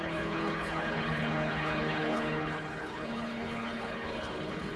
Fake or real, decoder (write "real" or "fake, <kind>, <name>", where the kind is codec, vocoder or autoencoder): fake, codec, HILCodec